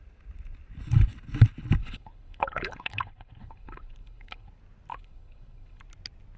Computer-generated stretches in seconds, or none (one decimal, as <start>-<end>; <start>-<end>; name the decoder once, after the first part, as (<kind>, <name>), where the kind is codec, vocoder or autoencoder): 1.8-4.5 (codec, HILCodec); 4.9-5.8